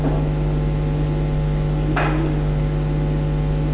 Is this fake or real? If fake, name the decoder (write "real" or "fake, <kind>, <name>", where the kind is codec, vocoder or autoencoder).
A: real